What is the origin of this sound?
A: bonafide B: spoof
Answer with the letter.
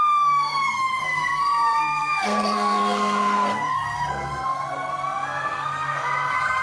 B